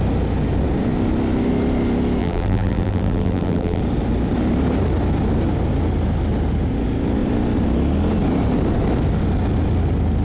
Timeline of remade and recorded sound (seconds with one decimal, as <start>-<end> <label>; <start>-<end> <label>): 0.0-2.2 recorded; 2.2-3.8 remade; 3.8-10.2 recorded